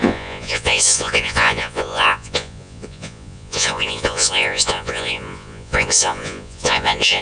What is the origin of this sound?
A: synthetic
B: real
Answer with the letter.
A